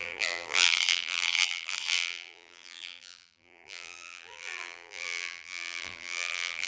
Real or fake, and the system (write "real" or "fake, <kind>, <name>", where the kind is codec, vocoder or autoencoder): fake, vocoder, BigVGAN v2